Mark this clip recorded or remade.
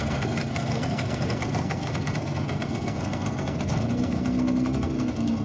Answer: remade